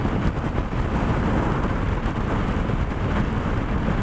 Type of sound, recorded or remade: recorded